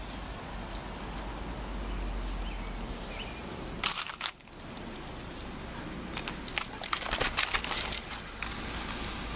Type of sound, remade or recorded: recorded